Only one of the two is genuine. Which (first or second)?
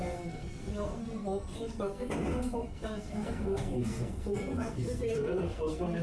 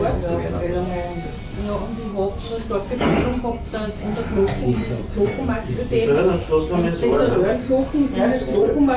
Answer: second